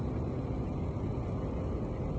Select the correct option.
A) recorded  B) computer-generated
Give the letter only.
A